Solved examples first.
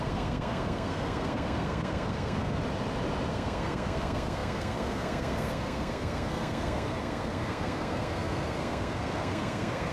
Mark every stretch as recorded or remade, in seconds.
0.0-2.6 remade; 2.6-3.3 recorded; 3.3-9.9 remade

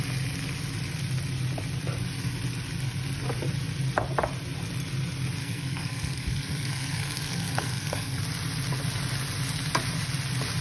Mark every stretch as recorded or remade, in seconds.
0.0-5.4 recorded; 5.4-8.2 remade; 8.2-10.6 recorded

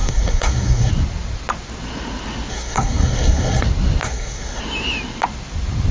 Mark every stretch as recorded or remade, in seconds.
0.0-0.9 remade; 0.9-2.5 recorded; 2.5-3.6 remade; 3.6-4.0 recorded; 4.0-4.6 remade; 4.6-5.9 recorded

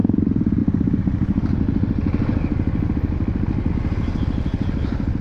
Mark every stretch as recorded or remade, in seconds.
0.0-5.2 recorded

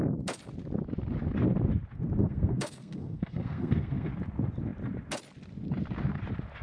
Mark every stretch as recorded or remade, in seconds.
0.0-2.2 recorded; 2.2-4.1 remade; 4.1-6.6 recorded